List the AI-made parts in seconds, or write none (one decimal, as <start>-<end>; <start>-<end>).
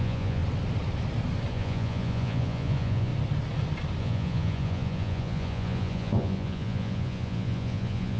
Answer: 0.0-0.4; 1.5-3.1; 4.0-8.2